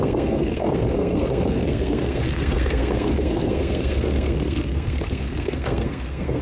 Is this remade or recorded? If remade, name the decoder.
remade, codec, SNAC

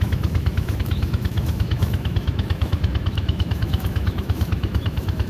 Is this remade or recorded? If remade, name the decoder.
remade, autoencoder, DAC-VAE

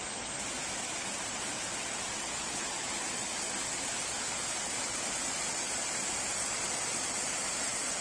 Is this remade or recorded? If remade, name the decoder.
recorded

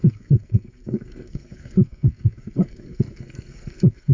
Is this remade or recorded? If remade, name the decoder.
remade, codec, SNAC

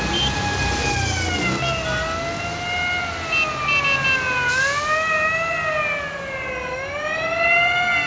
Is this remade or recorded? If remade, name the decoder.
recorded